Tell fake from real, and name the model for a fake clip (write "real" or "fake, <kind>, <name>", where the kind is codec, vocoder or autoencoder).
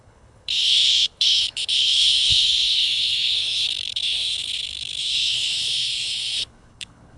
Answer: fake, codec, HILCodec